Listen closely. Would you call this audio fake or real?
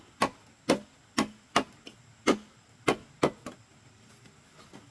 real